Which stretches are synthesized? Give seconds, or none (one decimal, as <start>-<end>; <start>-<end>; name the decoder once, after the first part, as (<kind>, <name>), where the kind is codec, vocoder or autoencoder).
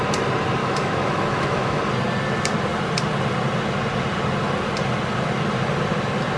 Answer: 0.6-1.8 (autoencoder, DAC-VAE)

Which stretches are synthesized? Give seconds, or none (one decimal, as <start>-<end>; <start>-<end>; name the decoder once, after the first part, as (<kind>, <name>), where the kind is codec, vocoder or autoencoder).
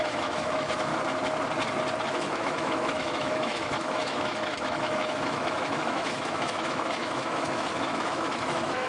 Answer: 0.0-0.9 (autoencoder, DAC-VAE); 2.1-8.9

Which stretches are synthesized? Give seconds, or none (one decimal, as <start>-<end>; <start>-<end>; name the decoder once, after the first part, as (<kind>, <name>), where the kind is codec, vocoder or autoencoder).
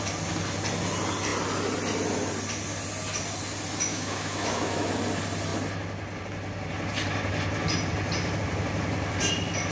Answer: 3.9-4.9 (autoencoder, DAC-VAE)